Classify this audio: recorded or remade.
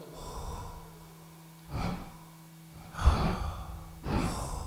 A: recorded